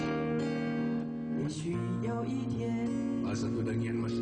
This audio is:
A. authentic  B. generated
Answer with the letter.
A